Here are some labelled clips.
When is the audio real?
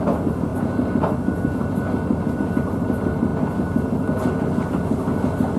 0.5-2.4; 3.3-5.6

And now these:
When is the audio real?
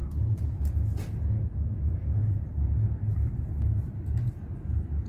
0.6-5.1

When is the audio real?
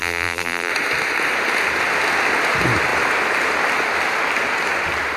0.7-5.2